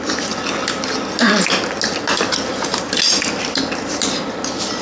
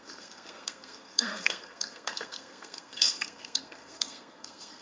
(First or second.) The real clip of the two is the first